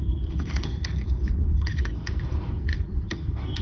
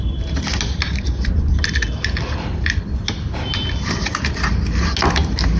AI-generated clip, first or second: first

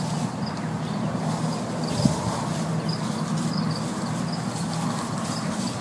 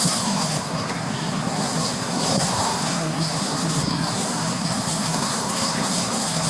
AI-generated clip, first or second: second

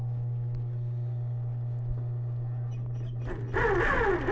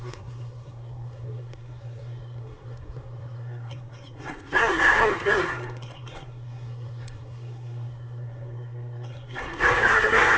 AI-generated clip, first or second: second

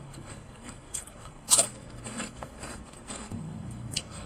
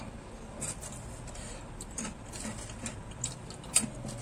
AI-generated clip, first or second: first